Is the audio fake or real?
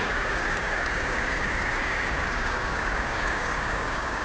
fake